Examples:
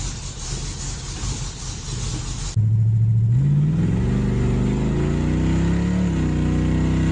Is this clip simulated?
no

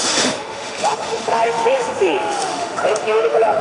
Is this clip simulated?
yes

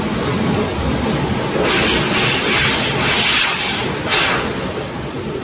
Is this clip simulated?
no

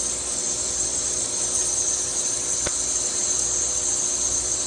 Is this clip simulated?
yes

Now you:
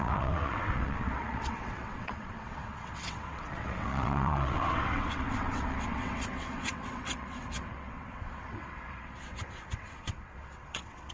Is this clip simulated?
yes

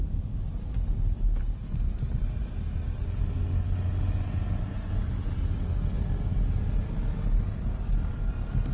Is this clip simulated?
no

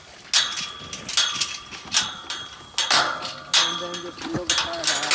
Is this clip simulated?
no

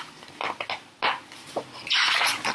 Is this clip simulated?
no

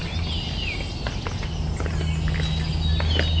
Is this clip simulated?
no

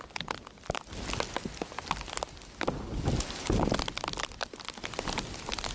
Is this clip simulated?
no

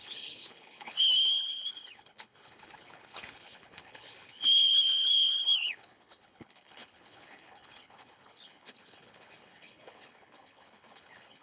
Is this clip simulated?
yes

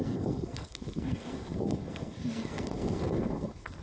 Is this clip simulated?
yes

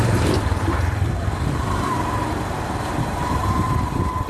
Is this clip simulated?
yes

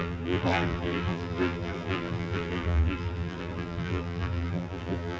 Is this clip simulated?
yes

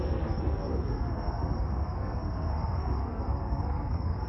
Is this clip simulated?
yes